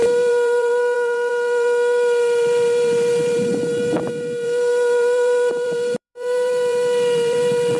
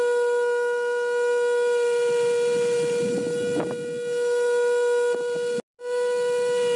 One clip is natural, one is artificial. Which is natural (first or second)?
second